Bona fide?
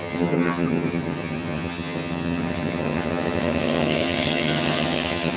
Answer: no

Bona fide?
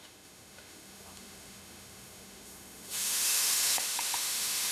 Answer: no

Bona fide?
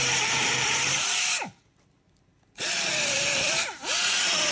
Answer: no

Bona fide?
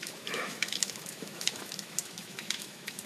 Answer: no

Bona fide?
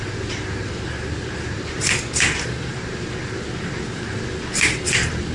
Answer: no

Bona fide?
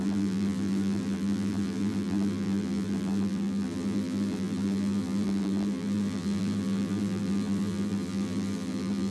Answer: no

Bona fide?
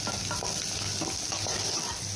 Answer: yes